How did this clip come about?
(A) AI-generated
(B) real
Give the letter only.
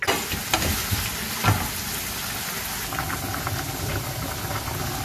B